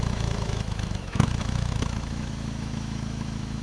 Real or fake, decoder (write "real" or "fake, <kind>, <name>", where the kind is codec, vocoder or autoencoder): fake, autoencoder, DAC-VAE